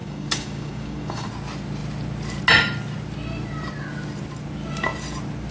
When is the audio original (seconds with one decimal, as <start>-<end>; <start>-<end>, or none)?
1.3-5.5